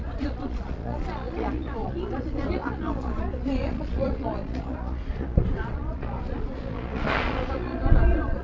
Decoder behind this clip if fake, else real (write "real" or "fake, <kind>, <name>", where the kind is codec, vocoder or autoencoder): fake, vocoder, Vocos